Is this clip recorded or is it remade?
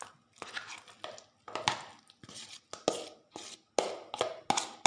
recorded